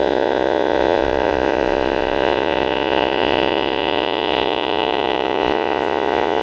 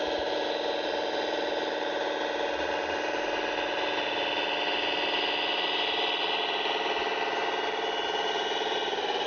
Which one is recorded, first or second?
second